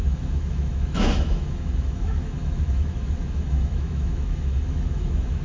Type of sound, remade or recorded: remade